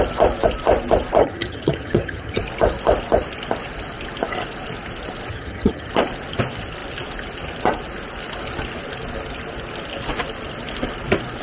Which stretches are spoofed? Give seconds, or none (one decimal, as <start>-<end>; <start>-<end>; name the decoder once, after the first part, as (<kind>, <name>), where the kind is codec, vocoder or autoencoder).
1.2-2.4 (vocoder, HiFi-GAN); 5.3-5.9